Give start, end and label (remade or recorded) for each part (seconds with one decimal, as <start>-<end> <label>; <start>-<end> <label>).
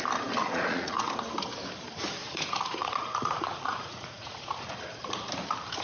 0.0-0.4 recorded; 0.4-1.1 remade; 1.1-2.2 recorded; 2.2-4.5 remade; 4.5-5.8 recorded